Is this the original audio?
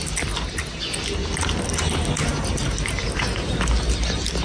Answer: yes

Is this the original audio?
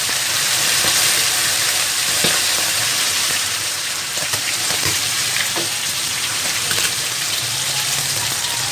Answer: no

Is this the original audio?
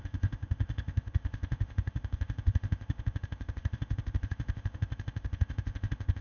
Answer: no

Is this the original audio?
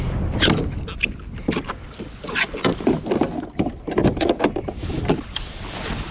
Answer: yes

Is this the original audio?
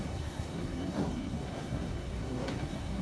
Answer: no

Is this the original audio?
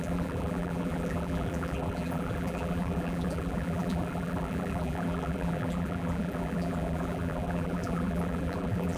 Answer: no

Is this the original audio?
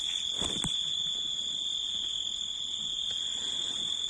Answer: yes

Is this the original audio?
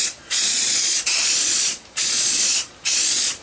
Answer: no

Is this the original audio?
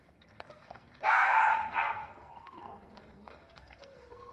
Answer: no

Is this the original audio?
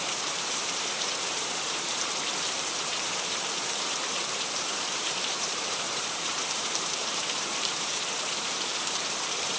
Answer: no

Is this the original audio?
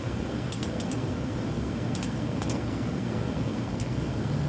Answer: no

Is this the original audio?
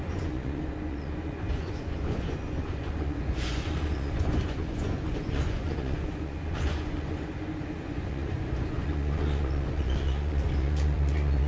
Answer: no